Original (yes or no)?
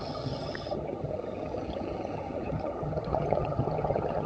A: no